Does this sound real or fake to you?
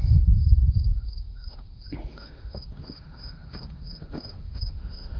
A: fake